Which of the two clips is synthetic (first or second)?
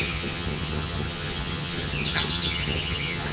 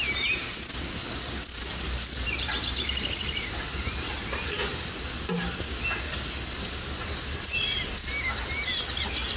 first